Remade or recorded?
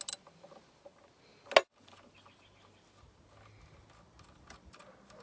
recorded